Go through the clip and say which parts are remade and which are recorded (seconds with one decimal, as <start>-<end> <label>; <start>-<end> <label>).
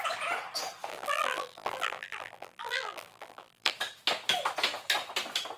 0.0-0.9 recorded; 0.9-3.7 remade; 3.7-5.6 recorded